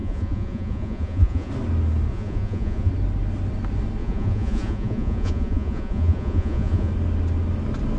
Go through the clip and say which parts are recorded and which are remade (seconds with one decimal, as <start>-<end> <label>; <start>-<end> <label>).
0.0-1.5 remade; 1.5-2.1 recorded; 2.1-2.9 remade; 2.9-4.0 recorded; 4.0-6.9 remade; 6.9-8.0 recorded